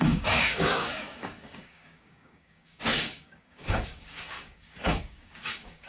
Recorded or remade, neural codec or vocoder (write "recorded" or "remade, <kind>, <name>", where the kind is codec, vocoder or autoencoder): remade, codec, DAC